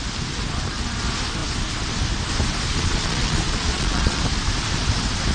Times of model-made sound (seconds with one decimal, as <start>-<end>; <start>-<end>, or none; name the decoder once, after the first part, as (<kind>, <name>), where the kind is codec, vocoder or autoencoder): 2.7-4.2 (vocoder, Vocos)